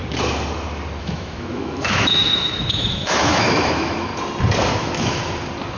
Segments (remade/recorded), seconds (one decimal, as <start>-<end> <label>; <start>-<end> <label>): 0.0-1.0 recorded; 1.0-4.1 remade; 4.1-4.7 recorded; 4.7-5.2 remade; 5.2-5.8 recorded